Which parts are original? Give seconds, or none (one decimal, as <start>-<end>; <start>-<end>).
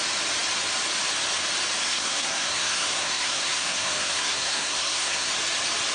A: 0.0-1.8; 5.3-5.9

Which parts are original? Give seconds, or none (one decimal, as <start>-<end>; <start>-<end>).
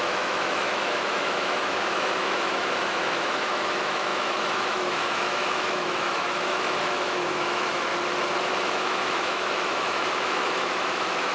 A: 7.9-8.4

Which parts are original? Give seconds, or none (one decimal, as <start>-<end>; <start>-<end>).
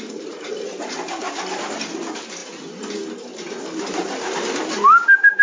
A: 0.0-5.4